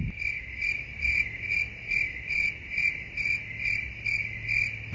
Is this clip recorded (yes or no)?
yes